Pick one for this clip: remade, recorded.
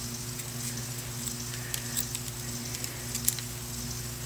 recorded